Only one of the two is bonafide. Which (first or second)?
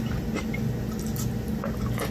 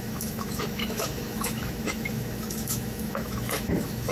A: first